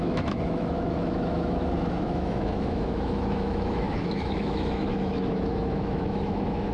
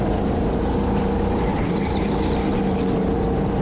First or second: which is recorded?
second